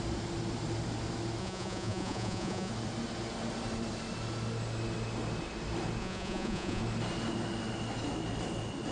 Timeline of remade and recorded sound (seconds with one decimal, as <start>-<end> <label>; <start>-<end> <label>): 0.0-1.4 recorded; 1.4-2.7 remade; 2.7-6.0 recorded; 6.0-6.8 remade; 6.8-8.9 recorded